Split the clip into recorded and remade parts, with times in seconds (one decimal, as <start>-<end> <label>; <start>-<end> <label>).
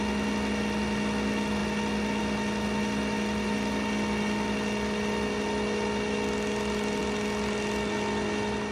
0.0-8.7 recorded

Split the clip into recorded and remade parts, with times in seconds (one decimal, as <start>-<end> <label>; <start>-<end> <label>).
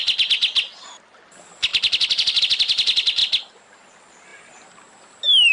0.0-5.5 recorded